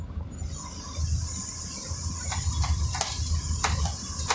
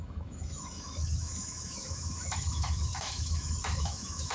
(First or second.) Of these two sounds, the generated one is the second